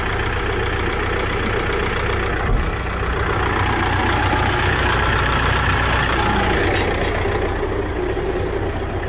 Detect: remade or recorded recorded